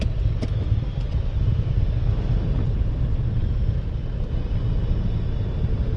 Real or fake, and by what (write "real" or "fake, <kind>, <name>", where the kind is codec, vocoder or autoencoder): real